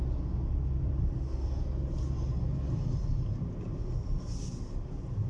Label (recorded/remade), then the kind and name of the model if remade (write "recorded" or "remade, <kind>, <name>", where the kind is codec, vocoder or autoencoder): recorded